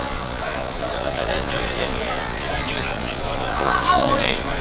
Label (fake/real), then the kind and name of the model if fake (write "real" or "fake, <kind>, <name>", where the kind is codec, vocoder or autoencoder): fake, vocoder, Vocos